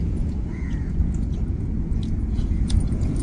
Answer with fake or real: fake